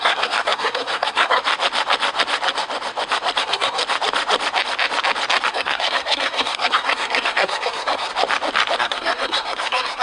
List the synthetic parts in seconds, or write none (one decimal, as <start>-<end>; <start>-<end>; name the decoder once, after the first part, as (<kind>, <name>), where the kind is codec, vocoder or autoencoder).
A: 0.0-1.4 (codec, SNAC); 3.4-3.8; 5.5-8.1; 8.8-10.0